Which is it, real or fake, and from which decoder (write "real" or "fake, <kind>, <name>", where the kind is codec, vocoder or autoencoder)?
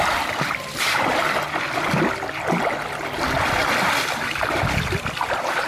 real